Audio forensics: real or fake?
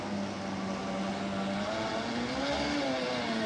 real